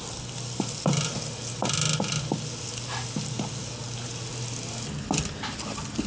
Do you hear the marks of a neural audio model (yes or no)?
no